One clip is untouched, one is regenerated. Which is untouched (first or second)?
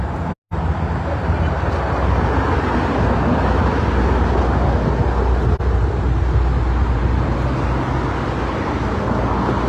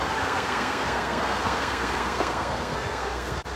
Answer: first